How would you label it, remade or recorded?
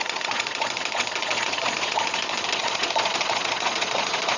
remade